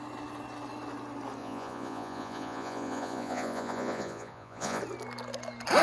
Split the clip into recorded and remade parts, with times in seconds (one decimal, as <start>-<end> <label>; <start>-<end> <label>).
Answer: 0.0-1.4 recorded; 1.4-4.8 remade; 4.8-5.8 recorded

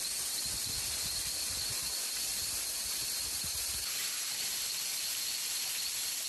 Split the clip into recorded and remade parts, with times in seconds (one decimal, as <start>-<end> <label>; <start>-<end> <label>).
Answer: 0.0-4.0 recorded; 4.0-5.6 remade; 5.6-6.3 recorded